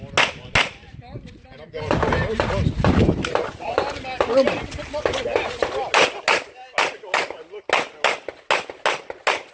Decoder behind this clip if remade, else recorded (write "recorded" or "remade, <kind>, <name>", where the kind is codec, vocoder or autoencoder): recorded